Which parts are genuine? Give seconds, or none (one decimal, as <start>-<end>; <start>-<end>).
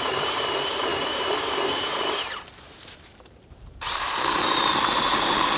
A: none